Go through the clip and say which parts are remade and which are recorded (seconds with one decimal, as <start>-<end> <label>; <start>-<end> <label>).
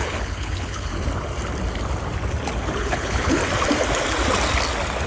0.0-0.9 remade; 0.9-2.8 recorded; 2.8-3.4 remade; 3.4-5.1 recorded